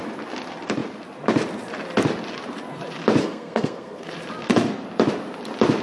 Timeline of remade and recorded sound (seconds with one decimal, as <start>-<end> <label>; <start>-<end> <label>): 0.0-3.2 recorded; 3.2-4.1 remade; 4.1-5.8 recorded

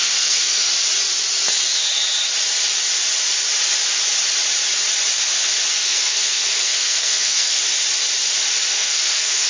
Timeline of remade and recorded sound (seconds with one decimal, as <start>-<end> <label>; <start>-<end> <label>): 0.0-0.7 remade; 0.7-5.7 recorded; 5.7-7.6 remade; 7.6-8.7 recorded; 8.7-9.5 remade

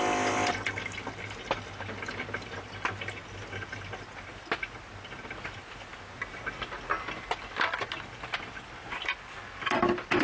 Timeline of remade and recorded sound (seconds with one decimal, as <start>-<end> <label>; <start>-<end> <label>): 0.0-10.2 recorded

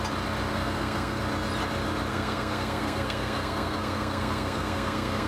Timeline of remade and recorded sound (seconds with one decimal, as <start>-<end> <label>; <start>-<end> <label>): 0.0-0.5 recorded; 0.5-1.2 remade; 1.2-2.1 recorded; 2.1-5.3 remade

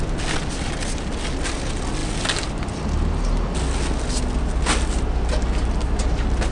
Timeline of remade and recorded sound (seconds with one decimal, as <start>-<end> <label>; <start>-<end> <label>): 0.0-6.5 recorded

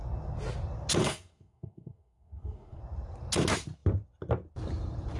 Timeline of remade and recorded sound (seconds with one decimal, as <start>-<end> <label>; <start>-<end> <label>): 0.0-1.0 recorded; 1.0-2.8 remade; 2.8-5.2 recorded

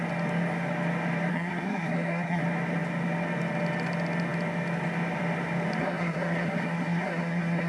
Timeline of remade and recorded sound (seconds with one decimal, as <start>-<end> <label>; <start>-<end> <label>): 0.0-1.3 recorded; 1.3-2.4 remade; 2.4-5.8 recorded; 5.8-7.7 remade

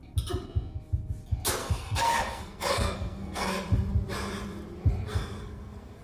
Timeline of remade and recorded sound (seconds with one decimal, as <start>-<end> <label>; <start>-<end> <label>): 0.0-1.6 recorded; 1.6-3.5 remade; 3.5-5.1 recorded; 5.1-6.0 remade